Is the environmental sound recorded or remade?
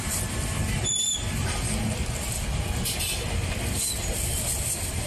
recorded